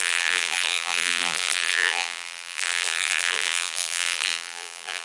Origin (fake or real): fake